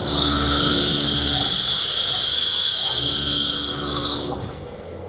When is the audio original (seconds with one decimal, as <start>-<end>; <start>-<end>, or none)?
1.4-2.3